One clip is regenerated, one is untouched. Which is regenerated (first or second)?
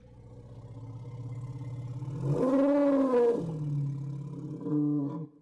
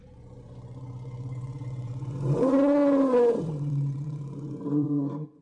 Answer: second